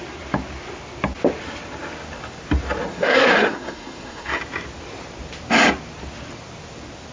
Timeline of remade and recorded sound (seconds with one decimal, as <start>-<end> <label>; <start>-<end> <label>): 0.0-2.9 recorded; 2.9-4.4 remade; 4.4-7.1 recorded